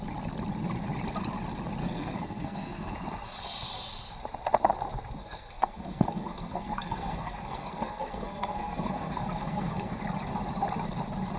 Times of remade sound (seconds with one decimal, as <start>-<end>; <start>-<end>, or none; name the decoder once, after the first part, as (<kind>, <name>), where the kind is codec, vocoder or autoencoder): 1.8-2.9 (codec, SNAC); 5.2-10.0